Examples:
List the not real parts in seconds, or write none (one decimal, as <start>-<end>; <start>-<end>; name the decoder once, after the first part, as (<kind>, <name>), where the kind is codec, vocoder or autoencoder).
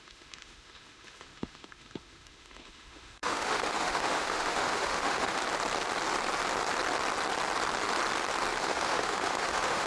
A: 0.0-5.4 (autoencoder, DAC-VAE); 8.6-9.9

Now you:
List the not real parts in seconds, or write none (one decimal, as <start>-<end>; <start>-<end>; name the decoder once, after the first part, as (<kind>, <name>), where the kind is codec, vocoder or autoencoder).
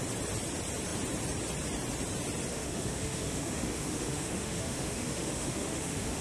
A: 2.5-6.2 (autoencoder, DAC-VAE)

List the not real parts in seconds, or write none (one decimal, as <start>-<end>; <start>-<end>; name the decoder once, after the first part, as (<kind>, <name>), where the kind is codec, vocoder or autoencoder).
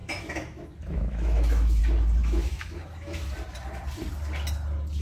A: 0.0-1.8 (autoencoder, DAC-VAE); 2.2-3.3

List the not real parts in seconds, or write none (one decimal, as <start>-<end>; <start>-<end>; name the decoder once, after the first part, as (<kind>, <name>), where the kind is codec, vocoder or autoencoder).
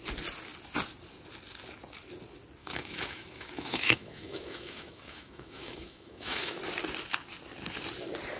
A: 2.6-6.6 (autoencoder, DAC-VAE)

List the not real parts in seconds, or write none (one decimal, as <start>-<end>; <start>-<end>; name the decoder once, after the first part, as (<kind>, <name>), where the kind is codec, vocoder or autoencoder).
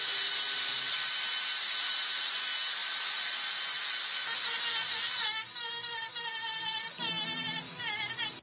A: none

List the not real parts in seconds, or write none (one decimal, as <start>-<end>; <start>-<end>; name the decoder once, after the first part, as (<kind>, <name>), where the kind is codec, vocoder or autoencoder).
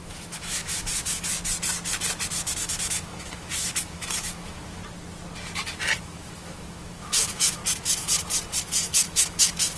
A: 0.0-1.3 (autoencoder, DAC-VAE); 2.6-4.8; 6.0-7.6; 8.6-9.8